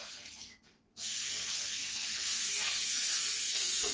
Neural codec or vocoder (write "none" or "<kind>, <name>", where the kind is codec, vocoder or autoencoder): codec, SNAC